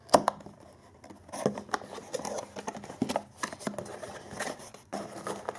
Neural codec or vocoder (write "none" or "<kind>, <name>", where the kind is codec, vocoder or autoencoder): none